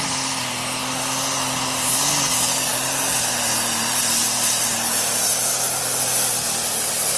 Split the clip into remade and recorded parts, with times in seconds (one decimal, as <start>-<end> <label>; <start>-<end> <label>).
0.0-7.2 recorded